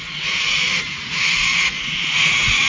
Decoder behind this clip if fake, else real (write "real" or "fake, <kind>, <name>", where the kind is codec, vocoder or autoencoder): fake, vocoder, Vocos